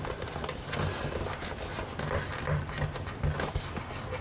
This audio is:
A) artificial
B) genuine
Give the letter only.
B